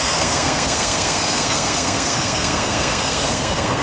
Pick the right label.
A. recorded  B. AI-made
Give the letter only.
B